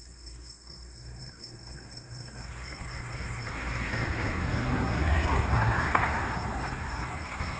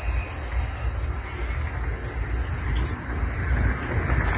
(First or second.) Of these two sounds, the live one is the second